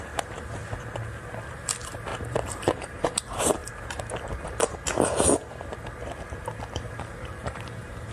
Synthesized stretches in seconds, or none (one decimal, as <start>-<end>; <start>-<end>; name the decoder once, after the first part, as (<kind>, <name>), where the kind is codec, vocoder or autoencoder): 0.0-0.6 (vocoder, BigVGAN v2); 1.5-3.6; 6.8-8.1